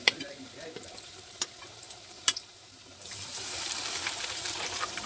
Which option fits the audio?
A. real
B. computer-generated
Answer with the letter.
B